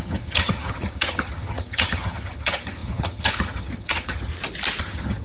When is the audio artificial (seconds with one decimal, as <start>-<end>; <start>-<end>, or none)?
0.0-4.3; 4.8-5.2